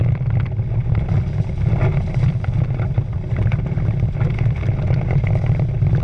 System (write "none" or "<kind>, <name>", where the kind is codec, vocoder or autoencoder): none